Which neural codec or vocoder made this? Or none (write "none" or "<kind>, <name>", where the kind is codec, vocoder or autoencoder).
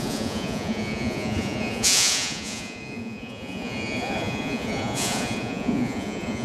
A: vocoder, Vocos